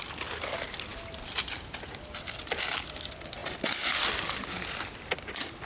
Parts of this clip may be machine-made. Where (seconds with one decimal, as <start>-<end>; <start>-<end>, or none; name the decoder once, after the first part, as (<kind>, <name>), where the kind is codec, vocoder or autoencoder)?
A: none